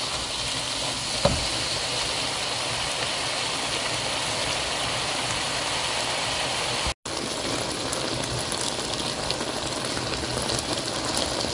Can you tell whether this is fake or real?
real